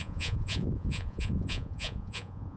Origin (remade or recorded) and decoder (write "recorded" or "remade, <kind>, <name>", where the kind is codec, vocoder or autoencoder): remade, vocoder, Vocos